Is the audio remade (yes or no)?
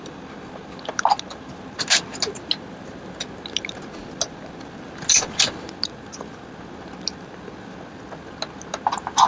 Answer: no